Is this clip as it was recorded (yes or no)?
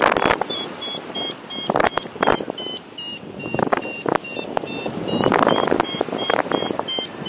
yes